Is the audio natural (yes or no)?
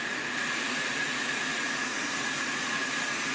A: no